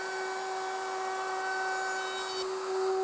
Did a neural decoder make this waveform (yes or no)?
no